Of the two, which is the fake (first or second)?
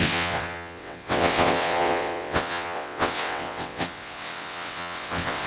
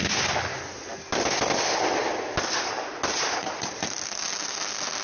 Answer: first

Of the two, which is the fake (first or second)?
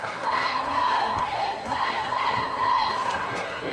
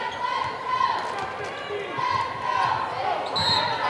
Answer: first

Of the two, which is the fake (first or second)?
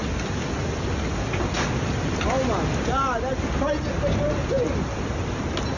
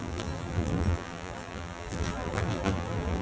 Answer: second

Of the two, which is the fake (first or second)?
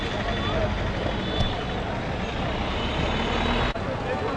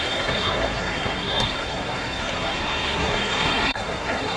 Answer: second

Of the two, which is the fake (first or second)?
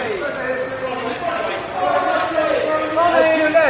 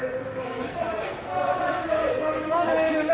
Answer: second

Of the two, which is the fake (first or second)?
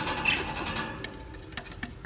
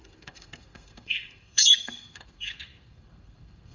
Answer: second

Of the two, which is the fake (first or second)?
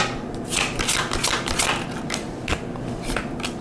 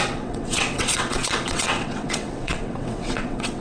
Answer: second